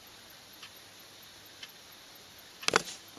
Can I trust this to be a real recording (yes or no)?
yes